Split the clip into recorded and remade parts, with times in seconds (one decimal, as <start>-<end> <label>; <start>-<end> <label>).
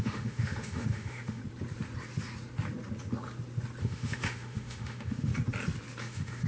0.0-1.4 remade; 1.4-3.8 recorded; 3.8-5.3 remade; 5.3-6.0 recorded; 6.0-6.5 remade